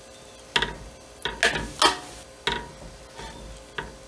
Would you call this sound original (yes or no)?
yes